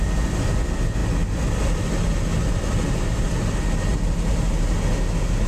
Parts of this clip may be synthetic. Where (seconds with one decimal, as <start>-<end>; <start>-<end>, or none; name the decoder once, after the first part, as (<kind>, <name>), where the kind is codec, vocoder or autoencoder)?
none